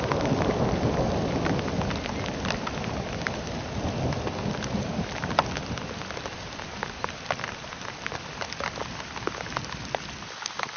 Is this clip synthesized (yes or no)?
yes